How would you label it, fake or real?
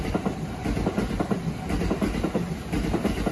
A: real